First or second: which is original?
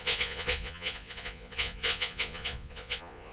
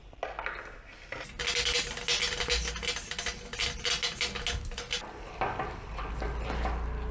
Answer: second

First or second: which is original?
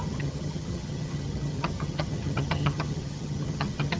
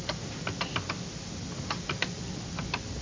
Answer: second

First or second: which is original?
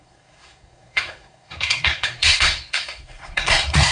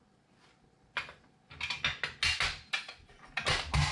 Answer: second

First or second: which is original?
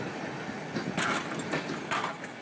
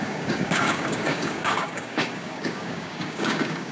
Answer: first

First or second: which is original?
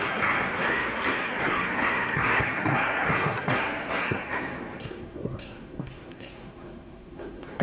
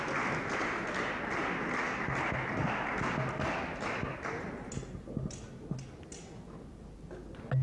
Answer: second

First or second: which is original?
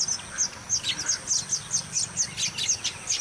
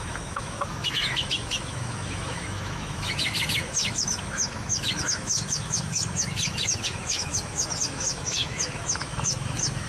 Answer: first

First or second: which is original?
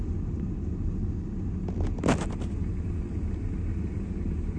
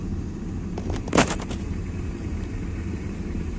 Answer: first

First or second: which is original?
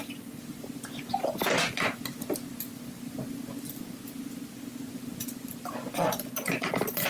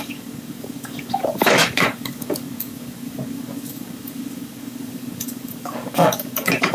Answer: first